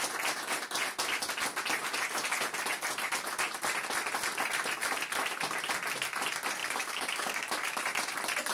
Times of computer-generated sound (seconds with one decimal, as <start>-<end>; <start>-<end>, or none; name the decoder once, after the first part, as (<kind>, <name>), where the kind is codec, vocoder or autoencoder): 6.6-7.8 (codec, DAC)